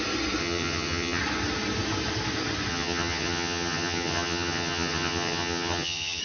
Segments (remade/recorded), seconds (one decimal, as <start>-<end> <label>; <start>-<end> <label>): 0.0-0.4 recorded; 0.4-1.2 remade; 1.2-2.7 recorded; 2.7-6.2 remade